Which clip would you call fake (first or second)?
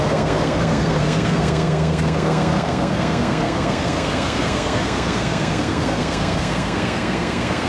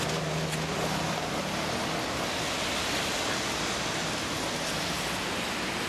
first